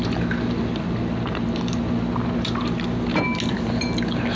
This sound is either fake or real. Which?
real